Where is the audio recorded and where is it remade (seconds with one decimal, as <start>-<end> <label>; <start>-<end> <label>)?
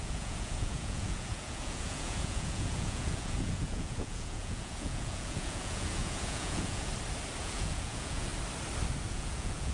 0.0-6.9 remade; 6.9-7.4 recorded; 7.4-8.3 remade; 8.3-9.1 recorded; 9.1-9.7 remade